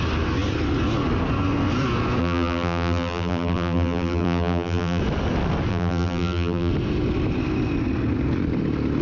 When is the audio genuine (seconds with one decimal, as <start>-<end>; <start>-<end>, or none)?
0.0-2.2; 5.0-5.7; 6.7-9.0